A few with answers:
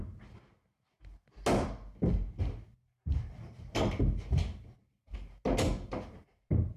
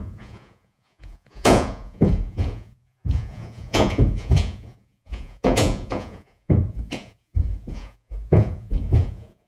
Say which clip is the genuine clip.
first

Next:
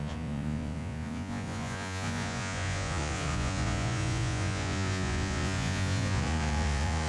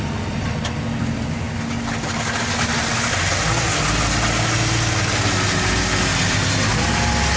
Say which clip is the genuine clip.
second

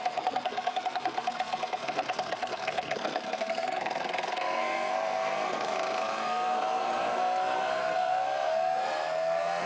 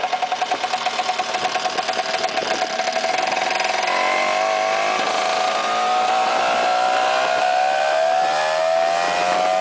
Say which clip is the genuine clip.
second